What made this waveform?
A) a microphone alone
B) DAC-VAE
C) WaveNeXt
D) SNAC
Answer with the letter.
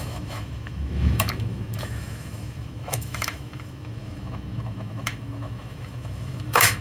B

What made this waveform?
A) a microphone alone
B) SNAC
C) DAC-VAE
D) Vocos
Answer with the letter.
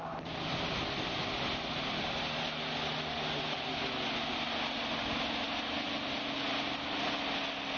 A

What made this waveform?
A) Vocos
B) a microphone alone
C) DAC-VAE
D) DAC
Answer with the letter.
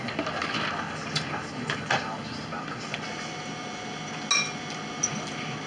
B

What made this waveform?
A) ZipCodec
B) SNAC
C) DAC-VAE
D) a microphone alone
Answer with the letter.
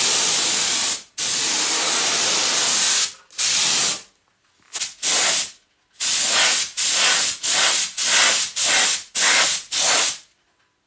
D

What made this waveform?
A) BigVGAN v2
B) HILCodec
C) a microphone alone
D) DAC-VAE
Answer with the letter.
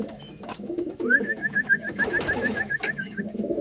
D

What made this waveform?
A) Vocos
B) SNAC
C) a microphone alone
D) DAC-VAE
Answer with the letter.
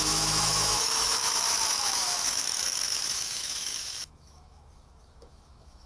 D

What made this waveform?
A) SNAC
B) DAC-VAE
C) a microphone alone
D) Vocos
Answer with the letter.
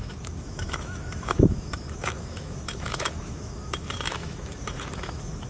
B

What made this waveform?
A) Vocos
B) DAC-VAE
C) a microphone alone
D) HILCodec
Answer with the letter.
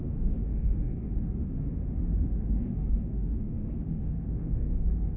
B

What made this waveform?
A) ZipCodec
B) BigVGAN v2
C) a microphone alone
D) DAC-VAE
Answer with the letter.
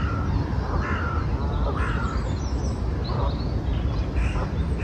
C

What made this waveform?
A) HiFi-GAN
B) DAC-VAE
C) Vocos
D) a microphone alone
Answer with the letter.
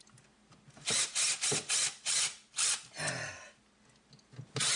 D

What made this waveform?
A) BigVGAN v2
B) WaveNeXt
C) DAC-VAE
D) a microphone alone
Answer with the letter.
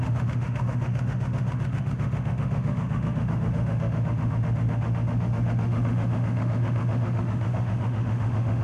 C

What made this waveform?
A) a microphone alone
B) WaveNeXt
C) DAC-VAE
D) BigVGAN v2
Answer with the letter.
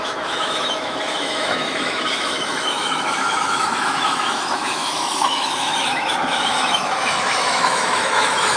C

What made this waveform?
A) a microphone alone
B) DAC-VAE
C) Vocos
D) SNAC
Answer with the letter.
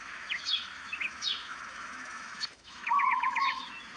B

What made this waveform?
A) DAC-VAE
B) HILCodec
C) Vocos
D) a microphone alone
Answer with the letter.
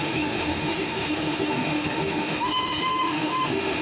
A